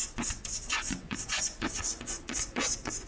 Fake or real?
fake